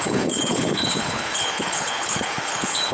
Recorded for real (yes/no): no